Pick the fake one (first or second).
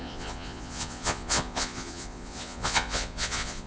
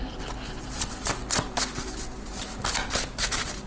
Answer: first